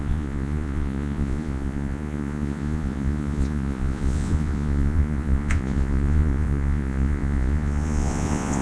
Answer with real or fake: fake